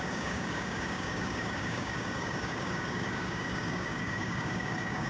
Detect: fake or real fake